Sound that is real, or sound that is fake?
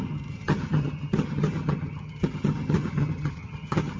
fake